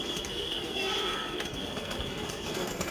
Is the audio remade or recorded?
remade